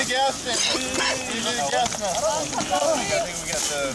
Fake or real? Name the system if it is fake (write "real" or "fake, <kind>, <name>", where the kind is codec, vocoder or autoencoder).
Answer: real